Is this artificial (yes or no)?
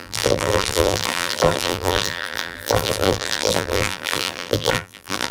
yes